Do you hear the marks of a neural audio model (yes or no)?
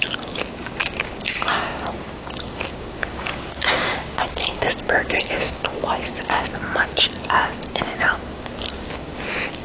yes